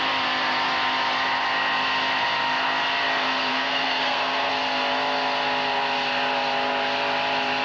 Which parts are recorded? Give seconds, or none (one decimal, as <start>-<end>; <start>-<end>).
0.0-3.5; 4.5-7.6